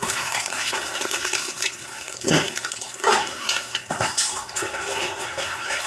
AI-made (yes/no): yes